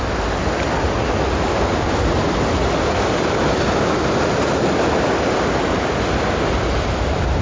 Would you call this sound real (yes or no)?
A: yes